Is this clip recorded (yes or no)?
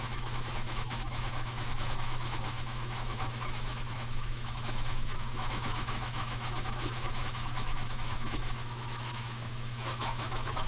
no